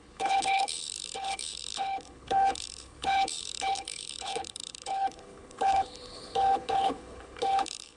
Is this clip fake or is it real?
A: fake